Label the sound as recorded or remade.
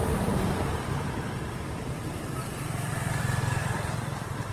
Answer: remade